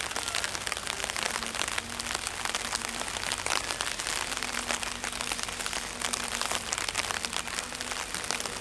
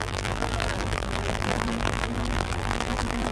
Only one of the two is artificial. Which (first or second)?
second